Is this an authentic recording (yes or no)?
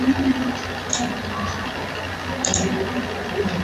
yes